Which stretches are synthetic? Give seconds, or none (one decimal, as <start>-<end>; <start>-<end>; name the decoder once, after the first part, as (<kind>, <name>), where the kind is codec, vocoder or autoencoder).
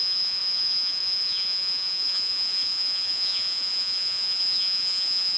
0.0-5.4 (vocoder, Vocos)